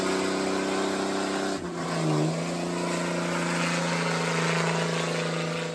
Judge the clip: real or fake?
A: real